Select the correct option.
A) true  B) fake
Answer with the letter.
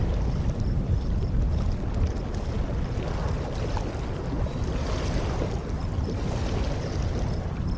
A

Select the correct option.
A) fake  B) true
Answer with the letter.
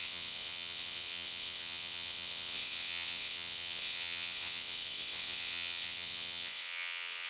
A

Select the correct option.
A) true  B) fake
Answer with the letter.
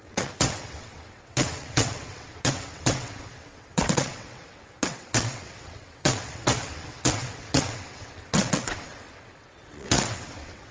B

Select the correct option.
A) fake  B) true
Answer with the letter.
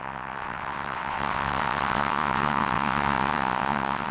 A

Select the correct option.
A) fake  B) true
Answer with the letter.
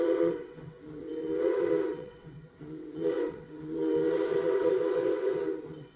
A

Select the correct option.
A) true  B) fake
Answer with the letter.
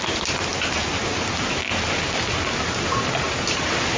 A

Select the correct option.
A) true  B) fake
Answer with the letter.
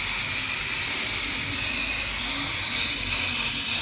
A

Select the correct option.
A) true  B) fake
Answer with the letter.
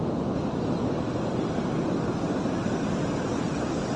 A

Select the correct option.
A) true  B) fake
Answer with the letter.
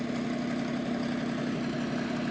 A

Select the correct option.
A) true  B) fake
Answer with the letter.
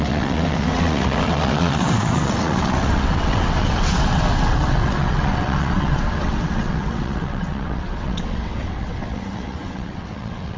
B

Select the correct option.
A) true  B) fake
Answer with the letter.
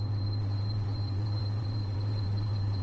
B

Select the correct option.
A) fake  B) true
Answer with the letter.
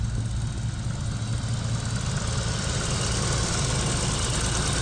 B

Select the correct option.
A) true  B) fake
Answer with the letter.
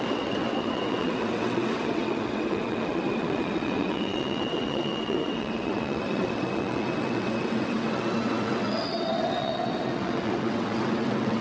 B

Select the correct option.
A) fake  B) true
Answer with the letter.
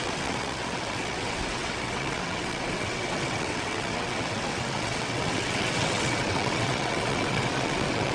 A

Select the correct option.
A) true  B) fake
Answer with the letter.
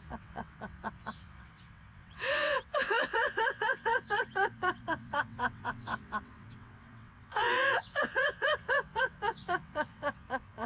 B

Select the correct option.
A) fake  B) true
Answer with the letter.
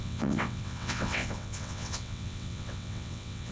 A